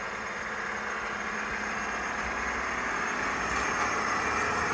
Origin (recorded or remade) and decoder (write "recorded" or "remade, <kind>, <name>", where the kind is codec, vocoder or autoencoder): recorded